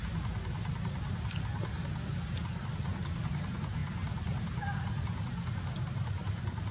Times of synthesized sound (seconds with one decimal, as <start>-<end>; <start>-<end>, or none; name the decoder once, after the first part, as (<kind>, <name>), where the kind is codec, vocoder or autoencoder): none